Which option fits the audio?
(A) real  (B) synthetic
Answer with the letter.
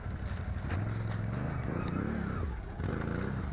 A